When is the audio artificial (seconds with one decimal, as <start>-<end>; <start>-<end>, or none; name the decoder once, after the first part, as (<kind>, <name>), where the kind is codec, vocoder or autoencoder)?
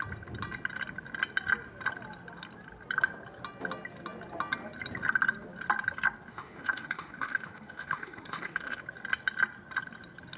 6.3-8.8 (autoencoder, DAC-VAE)